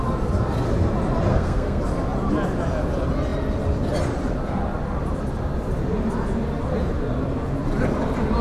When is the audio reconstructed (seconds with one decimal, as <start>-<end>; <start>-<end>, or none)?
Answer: 1.3-1.8